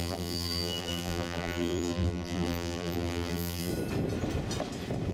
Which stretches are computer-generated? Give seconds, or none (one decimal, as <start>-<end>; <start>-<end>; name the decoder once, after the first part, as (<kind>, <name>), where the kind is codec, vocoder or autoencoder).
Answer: 0.0-3.7 (vocoder, BigVGAN v2)